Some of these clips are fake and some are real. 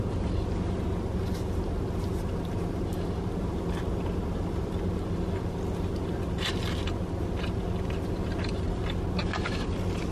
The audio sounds real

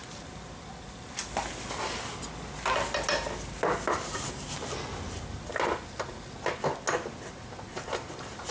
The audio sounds real